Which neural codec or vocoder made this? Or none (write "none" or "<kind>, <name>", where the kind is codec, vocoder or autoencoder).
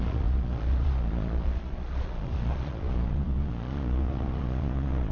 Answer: vocoder, Vocos